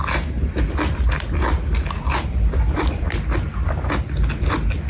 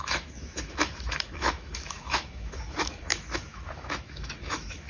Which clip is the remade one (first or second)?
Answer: second